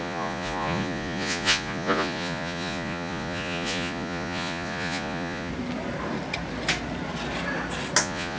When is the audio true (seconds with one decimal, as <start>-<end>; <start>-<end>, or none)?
5.5-8.0